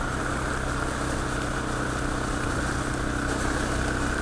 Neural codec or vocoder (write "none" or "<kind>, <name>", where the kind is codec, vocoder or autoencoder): none